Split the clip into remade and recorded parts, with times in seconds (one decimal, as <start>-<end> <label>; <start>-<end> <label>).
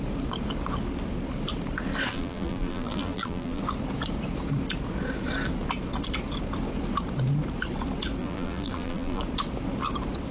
0.0-2.1 recorded; 2.1-3.6 remade; 3.6-8.2 recorded; 8.2-9.2 remade; 9.2-10.3 recorded